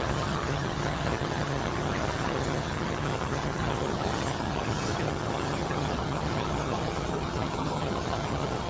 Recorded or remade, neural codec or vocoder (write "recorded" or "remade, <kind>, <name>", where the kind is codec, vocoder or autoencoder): remade, vocoder, HiFi-GAN